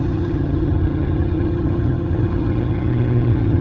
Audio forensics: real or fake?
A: fake